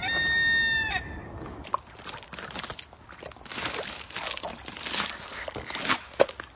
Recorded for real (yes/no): yes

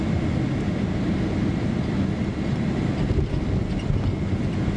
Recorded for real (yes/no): yes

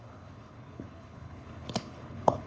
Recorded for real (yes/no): no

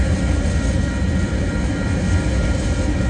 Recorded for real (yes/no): yes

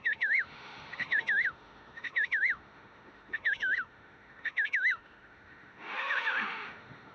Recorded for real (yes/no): no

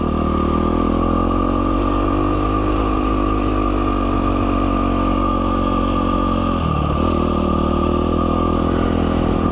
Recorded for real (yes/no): yes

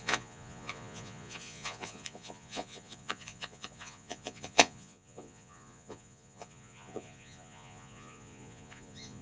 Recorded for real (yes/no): no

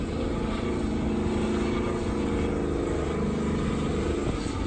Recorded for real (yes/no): yes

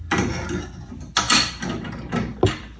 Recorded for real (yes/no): yes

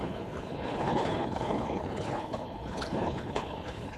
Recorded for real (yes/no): no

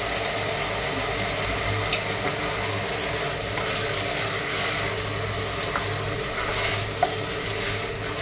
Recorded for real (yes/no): yes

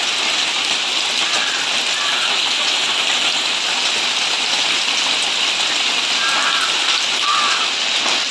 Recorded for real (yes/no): yes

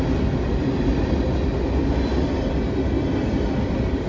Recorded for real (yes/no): yes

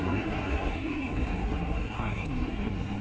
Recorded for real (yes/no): no